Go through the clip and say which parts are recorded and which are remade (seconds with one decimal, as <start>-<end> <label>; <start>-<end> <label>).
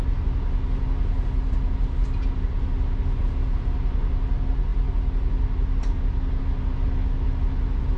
0.0-8.0 recorded